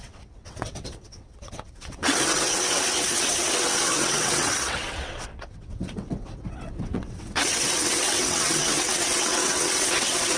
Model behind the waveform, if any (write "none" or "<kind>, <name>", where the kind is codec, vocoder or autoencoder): vocoder, WaveNeXt